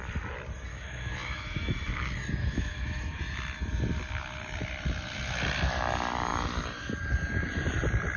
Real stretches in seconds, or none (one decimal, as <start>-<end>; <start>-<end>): 0.0-0.7; 2.0-2.4; 3.2-8.2